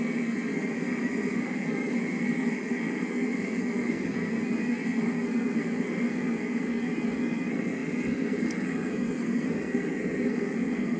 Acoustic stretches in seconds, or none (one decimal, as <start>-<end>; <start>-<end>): none

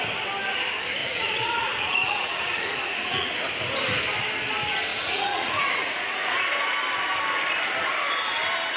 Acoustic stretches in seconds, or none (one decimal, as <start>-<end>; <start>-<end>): 0.0-1.0; 3.3-4.9; 6.4-8.8

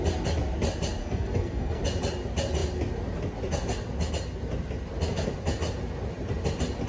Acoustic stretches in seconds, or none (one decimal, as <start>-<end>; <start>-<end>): 0.0-1.0; 1.8-6.9

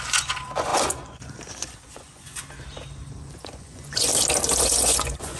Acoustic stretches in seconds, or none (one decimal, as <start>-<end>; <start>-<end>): 2.4-3.1; 4.1-4.6

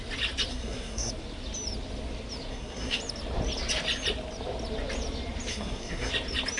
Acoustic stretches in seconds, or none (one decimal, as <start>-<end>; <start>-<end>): 0.0-0.5; 1.1-2.5; 3.0-5.5; 6.1-6.6

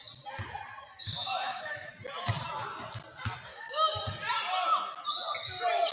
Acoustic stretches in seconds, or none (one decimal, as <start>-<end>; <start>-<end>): 0.0-0.8; 1.9-3.5; 4.1-5.9